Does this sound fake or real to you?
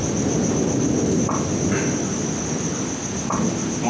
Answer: real